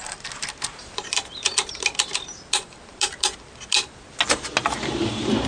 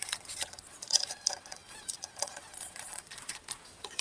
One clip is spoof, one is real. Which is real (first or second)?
first